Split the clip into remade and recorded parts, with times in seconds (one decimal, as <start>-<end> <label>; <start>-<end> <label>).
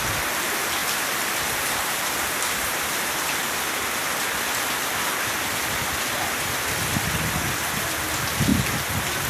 0.0-0.8 recorded; 0.8-3.9 remade; 3.9-9.3 recorded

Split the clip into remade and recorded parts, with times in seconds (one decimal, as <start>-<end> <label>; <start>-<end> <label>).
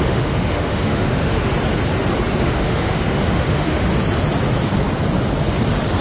0.0-1.5 remade; 1.5-2.4 recorded; 2.4-3.9 remade; 3.9-6.0 recorded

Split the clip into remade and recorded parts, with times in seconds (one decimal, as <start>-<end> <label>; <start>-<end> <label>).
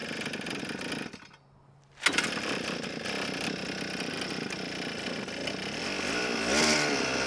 0.0-7.3 recorded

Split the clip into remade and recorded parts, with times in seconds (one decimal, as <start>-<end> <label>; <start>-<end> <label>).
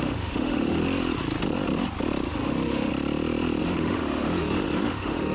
0.0-0.8 remade; 0.8-2.3 recorded; 2.3-2.9 remade; 2.9-3.6 recorded; 3.6-5.3 remade